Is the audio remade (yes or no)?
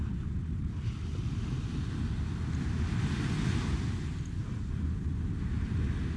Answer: no